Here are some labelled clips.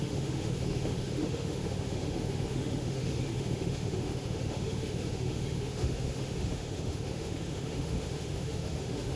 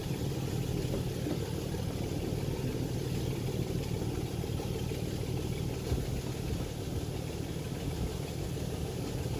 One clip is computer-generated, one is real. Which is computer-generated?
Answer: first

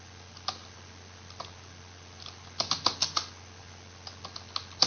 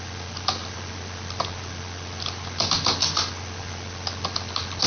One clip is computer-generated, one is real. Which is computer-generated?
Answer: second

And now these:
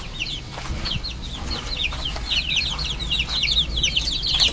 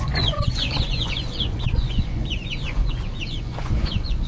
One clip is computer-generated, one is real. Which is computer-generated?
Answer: second